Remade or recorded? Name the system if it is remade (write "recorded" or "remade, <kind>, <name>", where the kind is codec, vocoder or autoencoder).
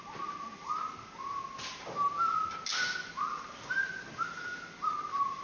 recorded